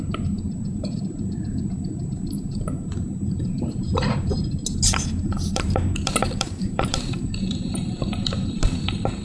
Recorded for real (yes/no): no